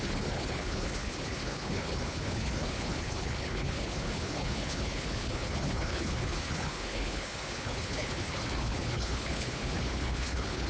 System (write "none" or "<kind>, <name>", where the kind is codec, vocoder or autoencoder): codec, HILCodec